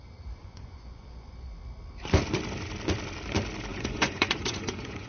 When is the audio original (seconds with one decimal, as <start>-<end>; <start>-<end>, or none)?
0.0-0.4; 1.3-3.7

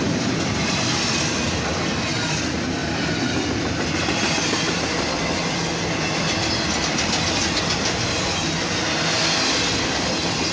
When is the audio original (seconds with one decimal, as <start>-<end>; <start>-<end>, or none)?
0.0-10.5

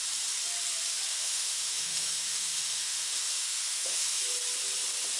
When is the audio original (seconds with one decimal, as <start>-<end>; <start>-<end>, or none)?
0.0-1.1; 4.2-5.2

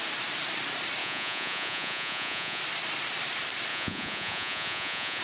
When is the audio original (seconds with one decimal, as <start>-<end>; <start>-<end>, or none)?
0.0-1.0; 2.6-3.7

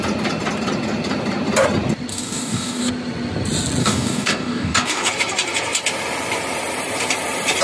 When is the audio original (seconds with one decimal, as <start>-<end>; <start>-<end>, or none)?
0.0-2.1; 2.9-3.8; 5.1-7.6

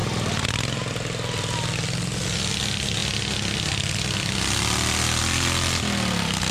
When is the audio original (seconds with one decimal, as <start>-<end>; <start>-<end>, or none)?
0.0-6.5